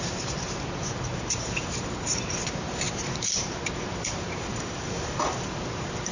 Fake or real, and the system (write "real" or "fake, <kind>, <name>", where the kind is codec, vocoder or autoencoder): fake, vocoder, BigVGAN v2